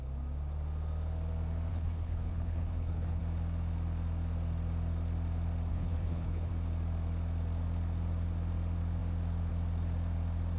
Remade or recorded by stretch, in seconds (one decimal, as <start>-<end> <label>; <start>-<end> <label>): 0.0-1.7 recorded; 1.7-3.2 remade; 3.2-5.7 recorded; 5.7-6.5 remade; 6.5-10.6 recorded